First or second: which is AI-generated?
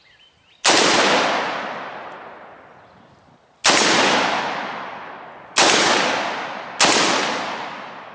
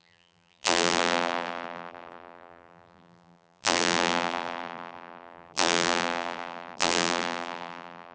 second